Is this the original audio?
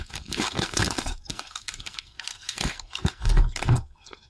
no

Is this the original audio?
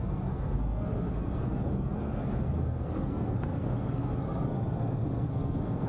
no